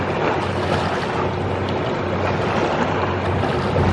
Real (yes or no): yes